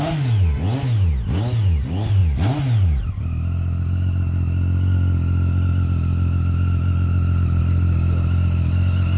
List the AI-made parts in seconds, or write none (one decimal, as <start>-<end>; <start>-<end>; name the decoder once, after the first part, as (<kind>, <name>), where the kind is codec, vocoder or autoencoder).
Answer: none